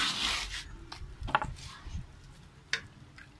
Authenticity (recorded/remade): recorded